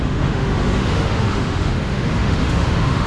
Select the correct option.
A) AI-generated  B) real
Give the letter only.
A